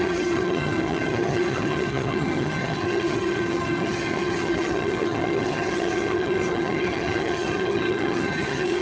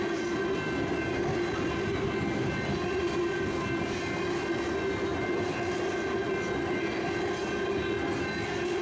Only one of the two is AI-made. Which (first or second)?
first